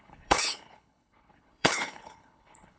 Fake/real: fake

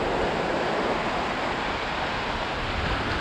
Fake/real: real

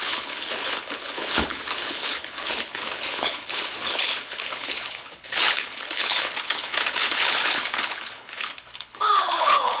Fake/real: fake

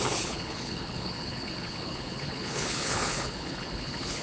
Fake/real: fake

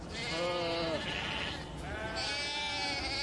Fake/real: real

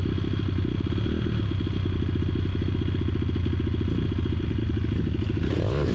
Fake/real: real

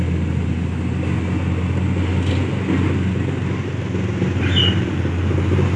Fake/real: real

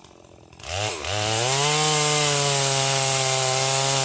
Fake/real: real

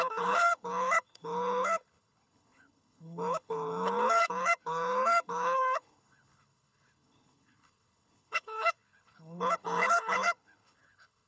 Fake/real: fake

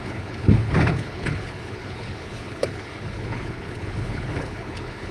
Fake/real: fake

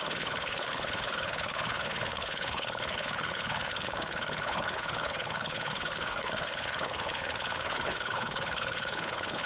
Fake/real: fake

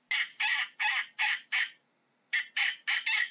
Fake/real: real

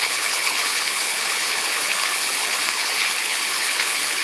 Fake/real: fake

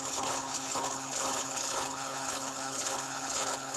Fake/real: fake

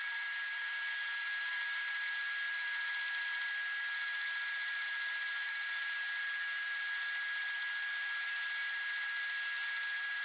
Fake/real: real